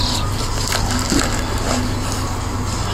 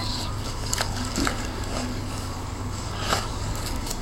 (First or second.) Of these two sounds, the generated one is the second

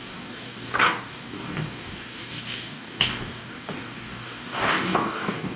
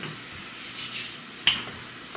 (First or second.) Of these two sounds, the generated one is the first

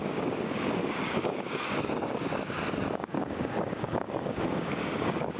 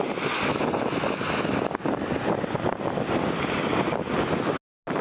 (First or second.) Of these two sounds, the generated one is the first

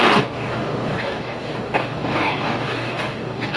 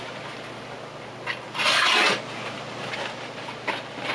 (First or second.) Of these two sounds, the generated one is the first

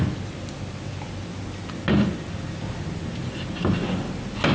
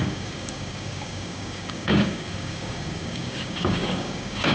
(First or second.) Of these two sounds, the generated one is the second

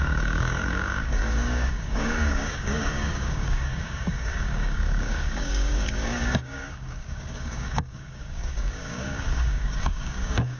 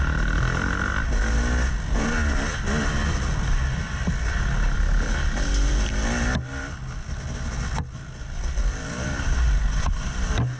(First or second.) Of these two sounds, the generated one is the first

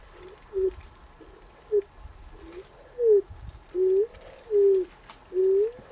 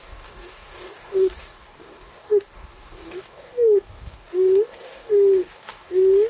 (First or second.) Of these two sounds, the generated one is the second